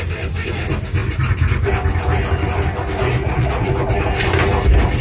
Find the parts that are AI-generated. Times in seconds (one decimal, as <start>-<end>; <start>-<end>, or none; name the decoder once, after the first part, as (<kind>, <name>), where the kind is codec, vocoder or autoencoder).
3.2-3.7 (vocoder, Vocos)